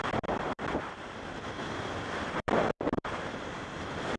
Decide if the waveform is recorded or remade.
remade